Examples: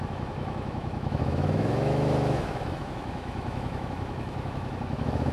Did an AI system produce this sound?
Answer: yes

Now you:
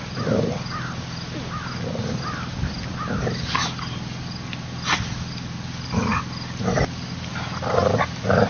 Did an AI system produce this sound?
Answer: no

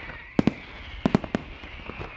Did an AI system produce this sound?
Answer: no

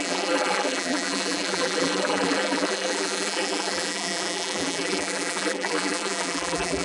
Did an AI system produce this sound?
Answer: yes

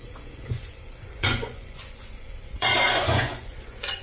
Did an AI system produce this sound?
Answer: yes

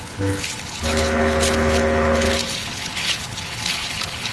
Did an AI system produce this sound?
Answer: yes